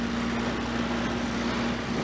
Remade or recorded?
recorded